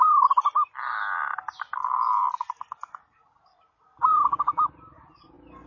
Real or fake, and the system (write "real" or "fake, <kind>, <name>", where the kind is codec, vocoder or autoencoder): real